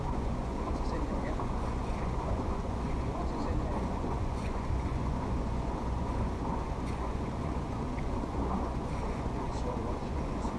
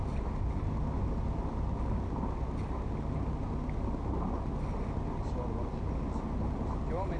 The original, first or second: second